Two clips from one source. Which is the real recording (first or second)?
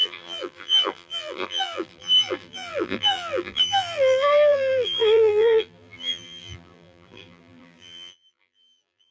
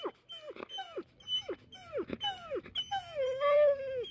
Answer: second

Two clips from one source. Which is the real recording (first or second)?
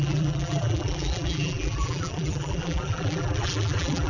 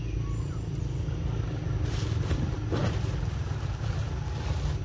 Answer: second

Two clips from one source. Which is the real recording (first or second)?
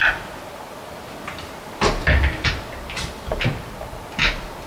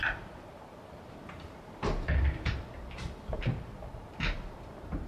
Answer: first